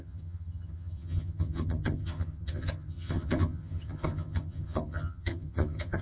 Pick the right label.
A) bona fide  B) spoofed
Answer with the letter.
B